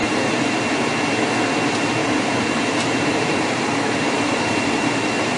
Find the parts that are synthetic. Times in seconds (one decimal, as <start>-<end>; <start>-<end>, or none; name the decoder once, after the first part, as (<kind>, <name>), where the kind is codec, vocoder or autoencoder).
0.0-0.6 (vocoder, BigVGAN v2); 2.0-5.4